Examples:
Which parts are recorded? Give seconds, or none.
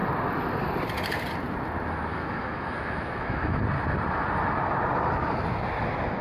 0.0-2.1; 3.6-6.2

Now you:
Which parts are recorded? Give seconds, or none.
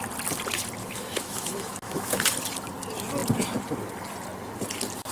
0.0-0.8; 2.2-5.1